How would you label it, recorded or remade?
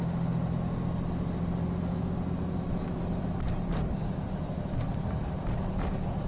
recorded